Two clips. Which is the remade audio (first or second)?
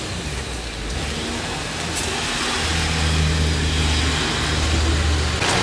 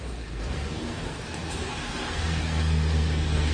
second